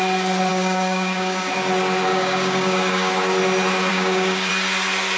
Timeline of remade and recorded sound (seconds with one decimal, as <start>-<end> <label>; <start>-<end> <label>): 0.0-0.5 recorded; 0.5-1.5 remade; 1.5-2.1 recorded; 2.1-3.1 remade; 3.1-3.9 recorded; 3.9-4.5 remade; 4.5-5.2 recorded